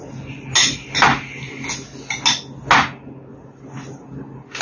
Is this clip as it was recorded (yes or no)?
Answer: yes